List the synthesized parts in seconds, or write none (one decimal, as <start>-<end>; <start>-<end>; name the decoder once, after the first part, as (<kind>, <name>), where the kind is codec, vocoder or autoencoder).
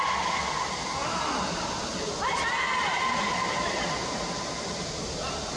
none